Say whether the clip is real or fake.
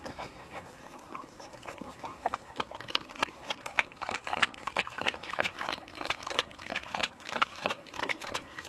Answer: fake